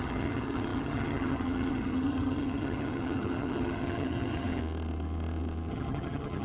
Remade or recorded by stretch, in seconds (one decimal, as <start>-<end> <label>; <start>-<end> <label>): 0.0-4.6 remade; 4.6-5.7 recorded; 5.7-6.4 remade